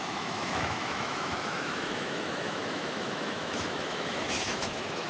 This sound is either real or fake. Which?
fake